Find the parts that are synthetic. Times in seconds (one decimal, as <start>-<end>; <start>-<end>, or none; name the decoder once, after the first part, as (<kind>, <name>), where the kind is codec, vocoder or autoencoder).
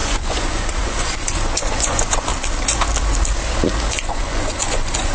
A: 0.0-2.3 (vocoder, Vocos); 3.9-5.1